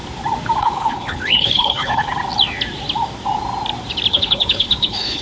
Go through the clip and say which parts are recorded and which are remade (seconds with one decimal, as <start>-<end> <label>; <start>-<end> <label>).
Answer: 0.0-0.6 recorded; 0.6-2.1 remade; 2.1-4.1 recorded; 4.1-5.2 remade